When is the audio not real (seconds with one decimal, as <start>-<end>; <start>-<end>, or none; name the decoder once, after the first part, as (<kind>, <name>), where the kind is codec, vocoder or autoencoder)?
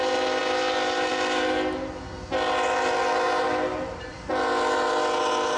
4.1-4.8 (vocoder, BigVGAN v2)